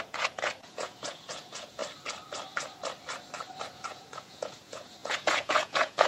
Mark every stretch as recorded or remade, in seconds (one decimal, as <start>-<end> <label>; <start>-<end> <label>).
0.0-1.8 remade; 1.8-3.7 recorded; 3.7-6.1 remade